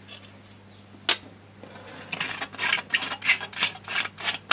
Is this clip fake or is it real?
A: real